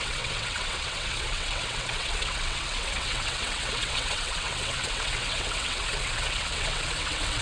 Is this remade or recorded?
remade